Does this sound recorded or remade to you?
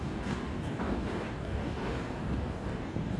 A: remade